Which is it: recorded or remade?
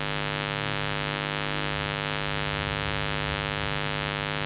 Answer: recorded